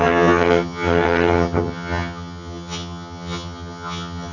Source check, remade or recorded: remade